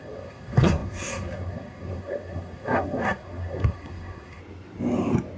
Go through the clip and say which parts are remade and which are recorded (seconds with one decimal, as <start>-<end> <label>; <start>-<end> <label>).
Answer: 0.0-4.4 remade; 4.4-5.4 recorded